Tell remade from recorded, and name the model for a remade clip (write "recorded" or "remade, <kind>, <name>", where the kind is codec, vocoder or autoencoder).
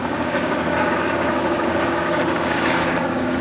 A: remade, codec, DAC